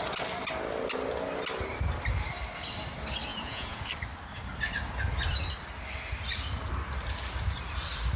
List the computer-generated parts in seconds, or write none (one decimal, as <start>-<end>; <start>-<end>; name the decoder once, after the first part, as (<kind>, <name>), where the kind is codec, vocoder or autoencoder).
3.3-3.9 (vocoder, Vocos)